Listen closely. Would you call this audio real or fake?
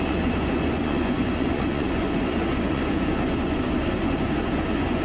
fake